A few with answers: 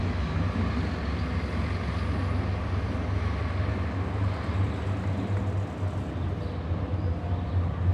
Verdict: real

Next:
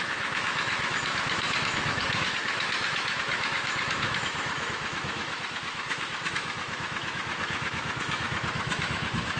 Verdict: fake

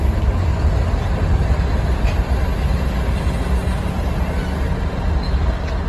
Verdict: real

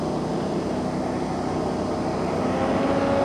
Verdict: real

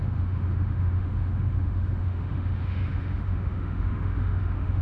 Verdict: fake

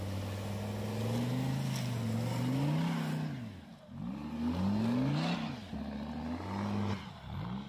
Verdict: real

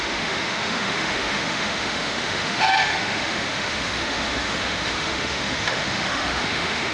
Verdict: fake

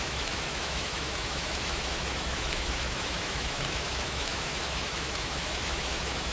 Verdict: fake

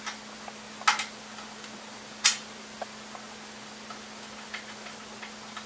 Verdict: real